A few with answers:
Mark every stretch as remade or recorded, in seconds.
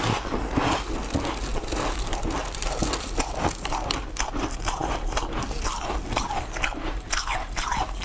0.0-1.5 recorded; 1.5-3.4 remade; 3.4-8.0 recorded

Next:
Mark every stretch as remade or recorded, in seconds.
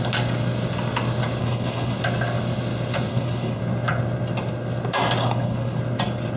0.0-1.4 recorded; 1.4-2.0 remade; 2.0-3.1 recorded; 3.1-3.6 remade; 3.6-5.2 recorded; 5.2-5.8 remade; 5.8-6.4 recorded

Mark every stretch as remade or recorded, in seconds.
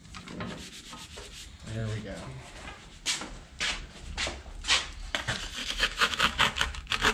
0.0-5.6 recorded; 5.6-7.1 remade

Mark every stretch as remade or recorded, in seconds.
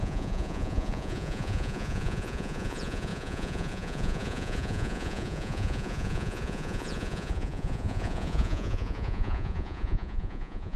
0.0-10.8 remade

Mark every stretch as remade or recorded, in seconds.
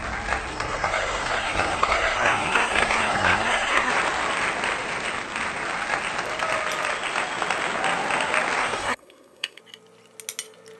0.0-0.5 recorded; 0.5-3.9 remade; 3.9-8.6 recorded; 8.6-9.6 remade; 9.6-10.8 recorded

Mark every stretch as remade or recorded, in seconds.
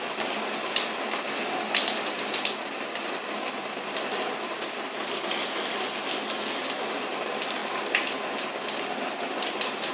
0.0-9.9 recorded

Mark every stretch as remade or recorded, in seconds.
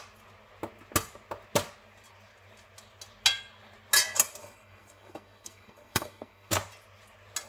0.0-4.4 recorded; 4.4-6.5 remade; 6.5-7.5 recorded